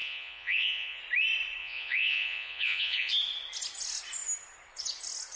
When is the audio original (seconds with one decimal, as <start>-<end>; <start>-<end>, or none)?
1.0-1.6; 3.1-5.4